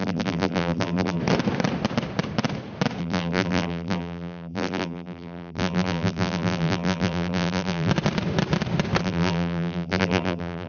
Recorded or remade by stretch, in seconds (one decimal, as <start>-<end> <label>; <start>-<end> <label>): 0.0-1.2 remade; 1.2-3.0 recorded; 3.0-7.9 remade; 7.9-9.0 recorded; 9.0-10.7 remade